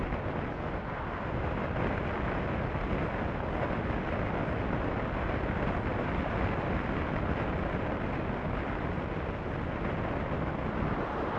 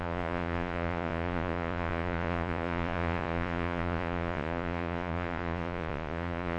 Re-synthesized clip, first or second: second